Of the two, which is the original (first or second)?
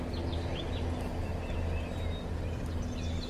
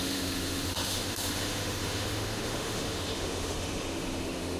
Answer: first